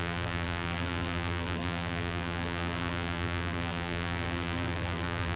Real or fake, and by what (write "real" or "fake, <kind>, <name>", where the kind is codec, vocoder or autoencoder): fake, vocoder, BigVGAN v2